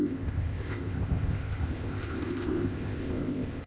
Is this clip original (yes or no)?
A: no